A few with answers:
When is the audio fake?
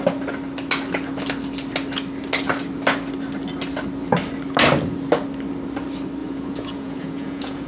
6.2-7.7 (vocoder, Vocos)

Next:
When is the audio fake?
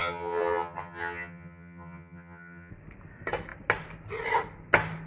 0.0-2.7 (vocoder, HiFi-GAN)